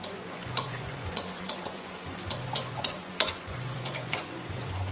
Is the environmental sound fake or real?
fake